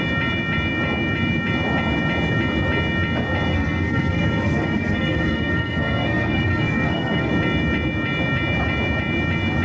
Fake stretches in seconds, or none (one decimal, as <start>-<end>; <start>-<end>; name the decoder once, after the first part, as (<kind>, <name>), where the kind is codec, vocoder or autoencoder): 3.5-7.3 (codec, SNAC)